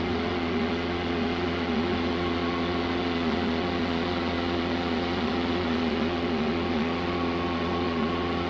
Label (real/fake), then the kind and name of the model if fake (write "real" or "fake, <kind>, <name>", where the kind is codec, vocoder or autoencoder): fake, vocoder, Vocos